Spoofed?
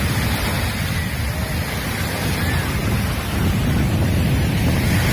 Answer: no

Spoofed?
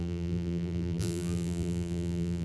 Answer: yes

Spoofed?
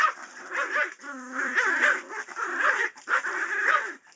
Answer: yes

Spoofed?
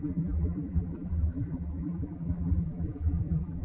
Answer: yes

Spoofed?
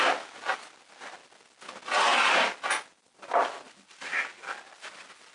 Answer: no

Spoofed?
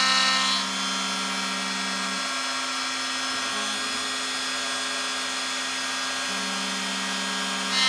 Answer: no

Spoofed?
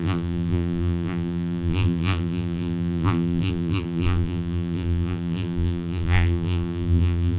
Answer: yes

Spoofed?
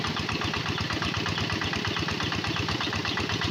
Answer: no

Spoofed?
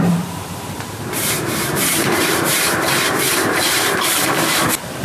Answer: yes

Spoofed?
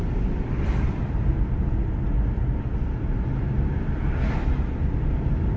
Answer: no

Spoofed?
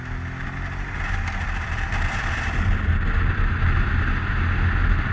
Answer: no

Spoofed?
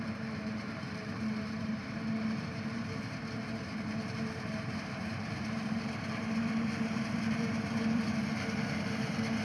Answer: yes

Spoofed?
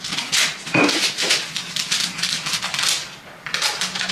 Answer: no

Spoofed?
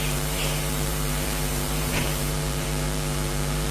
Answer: yes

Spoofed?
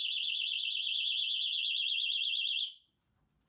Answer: no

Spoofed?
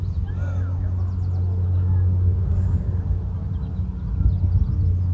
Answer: no